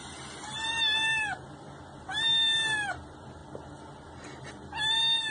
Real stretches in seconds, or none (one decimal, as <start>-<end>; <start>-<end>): 0.0-5.3